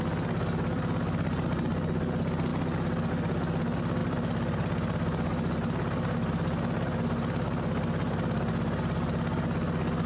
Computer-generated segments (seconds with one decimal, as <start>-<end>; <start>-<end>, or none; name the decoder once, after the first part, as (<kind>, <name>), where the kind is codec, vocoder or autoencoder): none